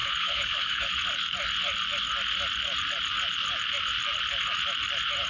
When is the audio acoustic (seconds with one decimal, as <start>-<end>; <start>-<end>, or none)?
0.9-5.3